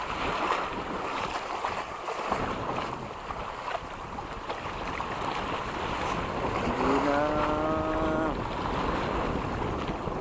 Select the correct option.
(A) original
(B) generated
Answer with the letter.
A